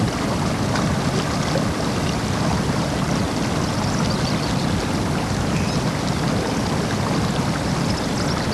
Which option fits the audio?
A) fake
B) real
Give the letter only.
B